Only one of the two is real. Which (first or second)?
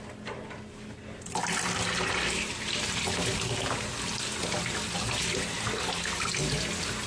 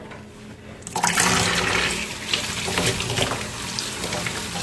second